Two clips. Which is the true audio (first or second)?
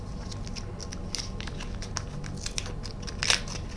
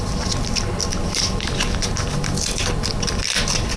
first